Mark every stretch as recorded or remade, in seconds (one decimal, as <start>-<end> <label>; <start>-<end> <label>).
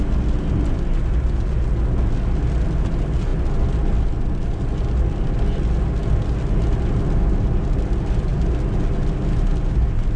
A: 0.0-10.2 recorded